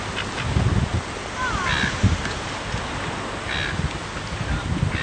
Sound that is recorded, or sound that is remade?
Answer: recorded